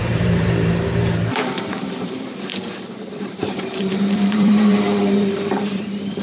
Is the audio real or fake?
fake